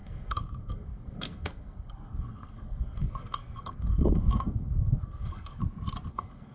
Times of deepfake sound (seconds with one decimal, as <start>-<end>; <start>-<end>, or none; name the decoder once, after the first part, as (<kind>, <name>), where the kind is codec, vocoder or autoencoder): 0.0-5.6 (codec, SNAC); 6.1-6.5